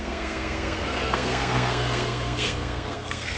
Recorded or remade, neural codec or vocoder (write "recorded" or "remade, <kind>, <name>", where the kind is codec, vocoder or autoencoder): remade, codec, SNAC